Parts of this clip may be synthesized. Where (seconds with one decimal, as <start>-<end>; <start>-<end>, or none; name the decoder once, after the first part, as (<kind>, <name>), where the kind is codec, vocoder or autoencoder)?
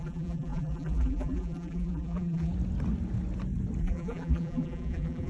0.0-2.5 (vocoder, BigVGAN v2); 3.8-5.3